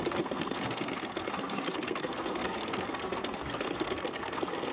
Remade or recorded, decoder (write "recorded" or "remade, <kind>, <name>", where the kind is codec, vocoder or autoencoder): remade, codec, SNAC